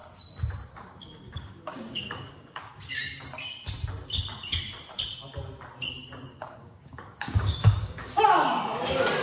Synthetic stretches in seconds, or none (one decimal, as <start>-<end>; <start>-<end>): 0.7-2.7; 6.6-9.2